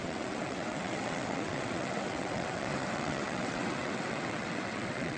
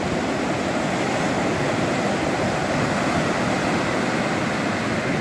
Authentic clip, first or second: second